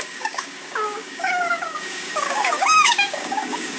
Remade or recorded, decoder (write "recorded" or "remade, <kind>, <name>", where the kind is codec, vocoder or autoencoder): remade, codec, DAC